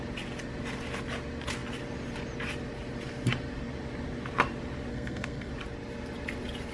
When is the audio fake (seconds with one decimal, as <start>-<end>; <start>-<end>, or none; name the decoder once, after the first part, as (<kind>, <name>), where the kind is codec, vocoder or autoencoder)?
4.9-5.5 (codec, SNAC)